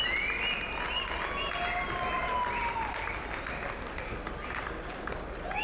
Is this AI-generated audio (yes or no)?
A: no